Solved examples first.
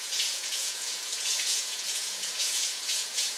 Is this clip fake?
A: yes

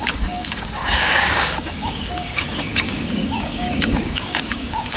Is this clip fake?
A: yes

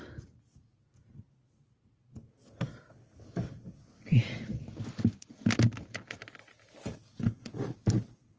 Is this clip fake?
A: no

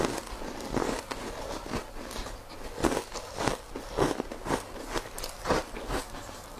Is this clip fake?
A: no